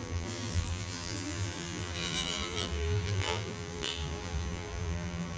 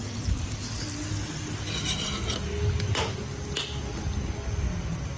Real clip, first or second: second